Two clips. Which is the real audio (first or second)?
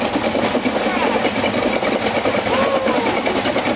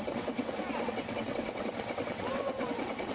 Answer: first